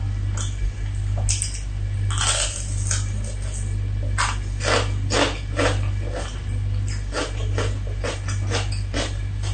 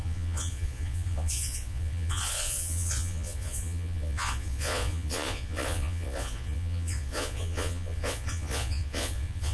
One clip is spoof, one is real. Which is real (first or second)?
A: first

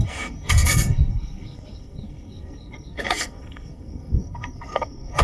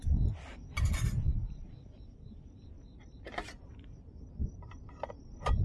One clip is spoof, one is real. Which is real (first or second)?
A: second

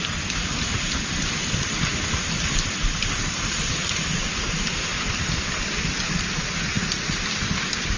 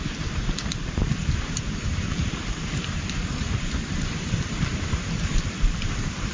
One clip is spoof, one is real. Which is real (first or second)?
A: first